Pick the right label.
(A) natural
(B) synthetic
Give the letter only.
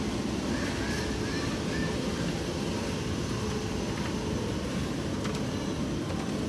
A